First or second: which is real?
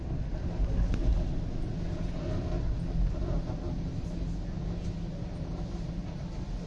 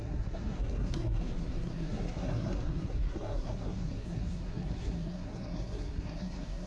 first